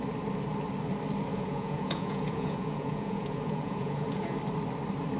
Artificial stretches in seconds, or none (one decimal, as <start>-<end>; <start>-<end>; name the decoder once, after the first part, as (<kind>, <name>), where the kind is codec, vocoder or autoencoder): 1.3-4.4 (vocoder, Vocos)